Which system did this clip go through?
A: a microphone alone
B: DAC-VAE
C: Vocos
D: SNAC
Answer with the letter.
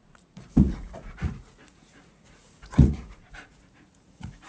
C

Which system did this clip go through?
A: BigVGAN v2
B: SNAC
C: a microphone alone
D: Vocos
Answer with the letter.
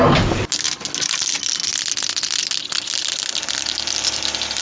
C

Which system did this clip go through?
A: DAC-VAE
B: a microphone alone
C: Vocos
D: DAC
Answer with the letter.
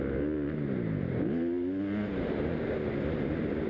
B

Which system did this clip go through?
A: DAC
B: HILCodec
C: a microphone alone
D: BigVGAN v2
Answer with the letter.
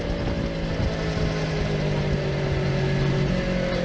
C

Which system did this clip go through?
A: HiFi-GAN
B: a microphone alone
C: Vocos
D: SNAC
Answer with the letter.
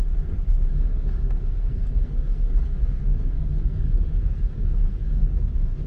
D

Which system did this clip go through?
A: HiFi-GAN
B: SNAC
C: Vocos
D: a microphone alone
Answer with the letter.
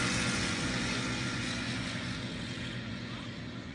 C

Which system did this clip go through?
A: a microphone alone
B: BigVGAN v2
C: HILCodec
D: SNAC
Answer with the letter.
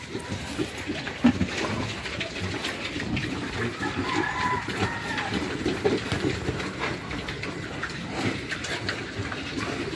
A